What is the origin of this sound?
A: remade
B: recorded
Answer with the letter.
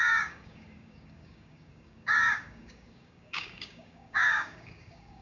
A